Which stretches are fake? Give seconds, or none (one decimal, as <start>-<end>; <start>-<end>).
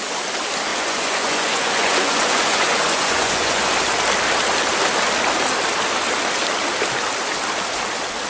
0.7-3.7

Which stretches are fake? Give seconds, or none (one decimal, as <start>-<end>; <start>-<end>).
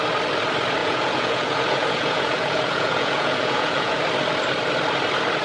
0.8-4.0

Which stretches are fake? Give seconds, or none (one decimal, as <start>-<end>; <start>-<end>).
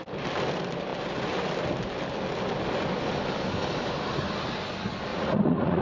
5.1-5.8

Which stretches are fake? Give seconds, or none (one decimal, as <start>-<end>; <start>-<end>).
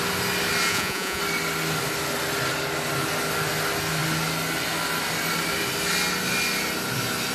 0.7-1.2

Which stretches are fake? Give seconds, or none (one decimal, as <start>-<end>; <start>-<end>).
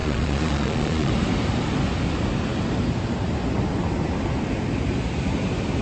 0.0-1.1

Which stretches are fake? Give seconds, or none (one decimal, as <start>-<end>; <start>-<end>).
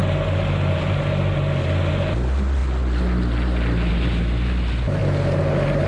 none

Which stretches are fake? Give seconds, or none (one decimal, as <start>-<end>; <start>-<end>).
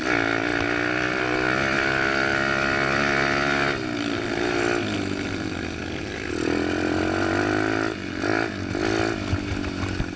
none